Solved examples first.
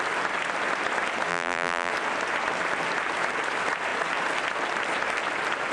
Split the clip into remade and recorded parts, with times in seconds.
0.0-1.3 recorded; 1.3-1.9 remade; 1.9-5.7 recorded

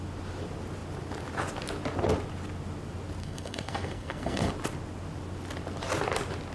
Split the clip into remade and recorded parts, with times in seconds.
0.0-3.2 recorded; 3.2-4.5 remade; 4.5-6.5 recorded

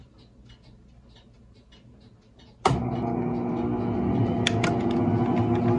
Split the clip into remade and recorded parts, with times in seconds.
0.0-5.8 recorded

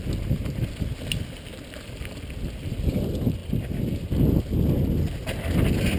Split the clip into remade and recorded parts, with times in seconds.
0.0-6.0 recorded